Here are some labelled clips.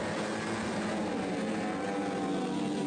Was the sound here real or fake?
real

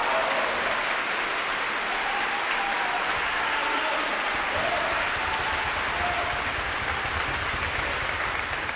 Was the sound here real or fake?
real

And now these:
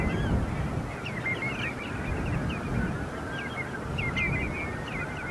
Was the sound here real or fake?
real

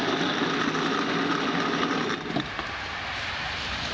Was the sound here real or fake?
real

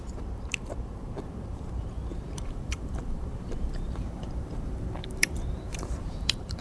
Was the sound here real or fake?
fake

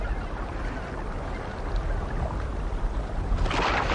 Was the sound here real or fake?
real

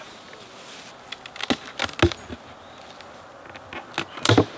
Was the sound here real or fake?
real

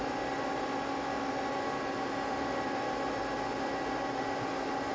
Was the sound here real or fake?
real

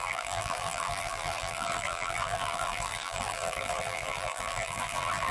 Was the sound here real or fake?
fake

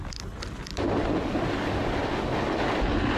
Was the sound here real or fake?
real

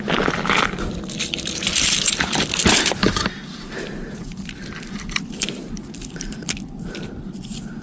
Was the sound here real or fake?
fake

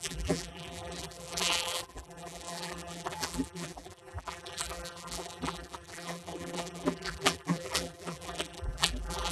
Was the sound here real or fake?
fake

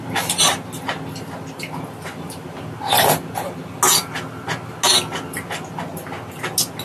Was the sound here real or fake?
real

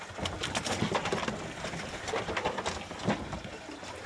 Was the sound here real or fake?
real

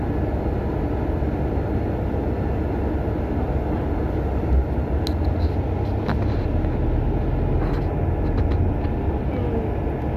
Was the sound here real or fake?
real